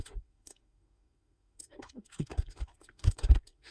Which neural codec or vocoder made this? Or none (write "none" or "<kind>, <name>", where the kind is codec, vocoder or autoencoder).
codec, SNAC